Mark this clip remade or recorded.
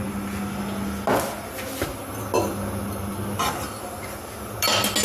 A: recorded